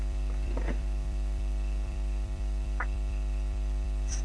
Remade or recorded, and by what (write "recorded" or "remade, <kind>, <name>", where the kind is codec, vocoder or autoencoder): remade, vocoder, BigVGAN v2